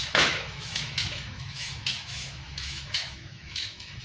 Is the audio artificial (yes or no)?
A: yes